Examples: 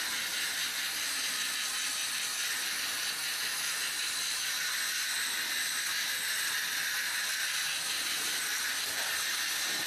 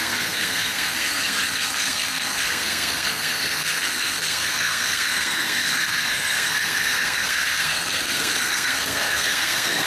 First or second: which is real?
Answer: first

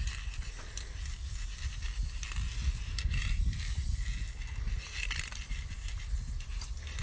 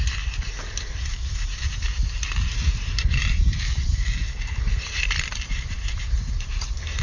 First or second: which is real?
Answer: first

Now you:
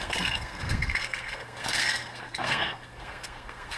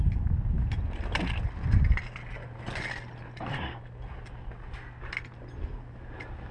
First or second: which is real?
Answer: second